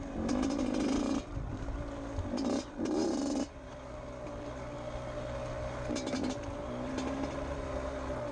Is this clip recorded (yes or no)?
yes